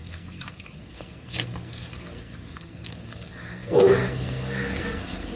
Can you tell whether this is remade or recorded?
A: remade